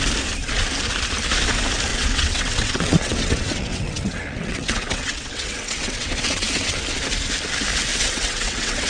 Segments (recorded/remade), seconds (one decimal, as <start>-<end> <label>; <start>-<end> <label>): 0.0-1.9 recorded; 1.9-6.8 remade; 6.8-7.9 recorded; 7.9-8.9 remade